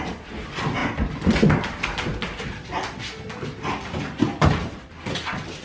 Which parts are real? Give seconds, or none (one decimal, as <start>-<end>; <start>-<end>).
0.0-5.6